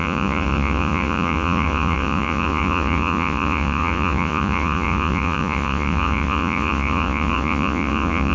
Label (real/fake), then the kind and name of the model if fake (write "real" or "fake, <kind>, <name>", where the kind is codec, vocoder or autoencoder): fake, vocoder, Vocos